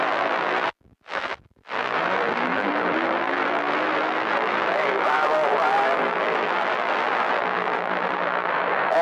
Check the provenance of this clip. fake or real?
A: fake